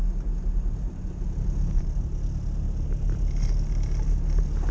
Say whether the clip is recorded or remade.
recorded